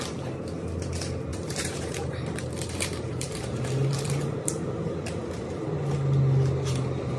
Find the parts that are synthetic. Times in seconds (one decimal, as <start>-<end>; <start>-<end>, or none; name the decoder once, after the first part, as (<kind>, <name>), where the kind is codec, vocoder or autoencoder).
1.3-5.6 (vocoder, BigVGAN v2)